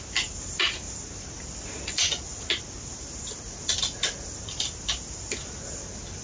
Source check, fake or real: real